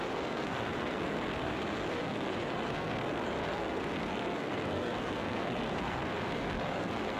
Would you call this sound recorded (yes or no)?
no